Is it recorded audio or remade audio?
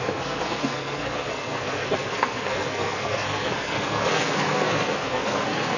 remade